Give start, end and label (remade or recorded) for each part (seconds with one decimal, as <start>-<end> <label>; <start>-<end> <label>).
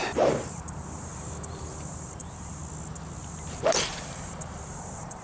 0.0-2.6 remade; 2.6-3.2 recorded; 3.2-5.2 remade